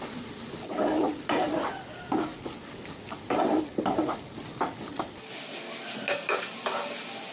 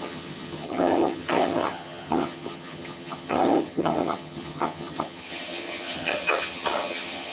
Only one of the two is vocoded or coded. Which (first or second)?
second